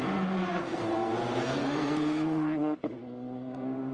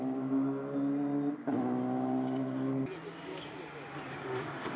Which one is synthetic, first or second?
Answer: first